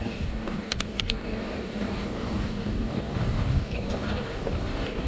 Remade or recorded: remade